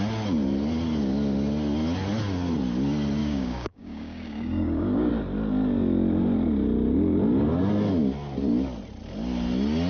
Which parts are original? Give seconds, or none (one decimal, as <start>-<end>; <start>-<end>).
0.0-3.2; 5.1-9.9